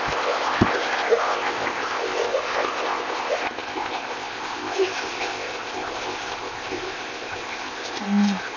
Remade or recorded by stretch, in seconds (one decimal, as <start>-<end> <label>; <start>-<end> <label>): 0.0-8.6 remade

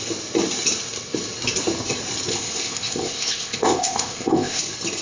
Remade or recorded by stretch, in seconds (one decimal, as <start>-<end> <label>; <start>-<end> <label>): 0.0-2.3 recorded; 2.3-4.6 remade; 4.6-5.0 recorded

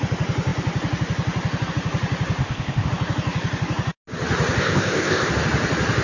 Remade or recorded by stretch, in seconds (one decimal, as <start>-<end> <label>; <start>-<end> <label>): 0.0-2.4 recorded; 2.4-2.9 remade; 2.9-4.6 recorded; 4.6-5.3 remade; 5.3-6.0 recorded

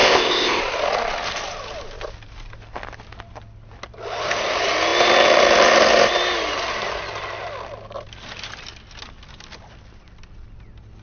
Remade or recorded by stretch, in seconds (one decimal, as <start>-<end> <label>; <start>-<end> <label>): 0.0-0.6 remade; 0.6-11.0 recorded